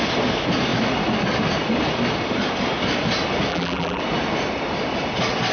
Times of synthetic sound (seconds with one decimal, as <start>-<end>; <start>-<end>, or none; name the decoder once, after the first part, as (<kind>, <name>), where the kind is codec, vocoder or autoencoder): 3.5-4.0 (vocoder, BigVGAN v2)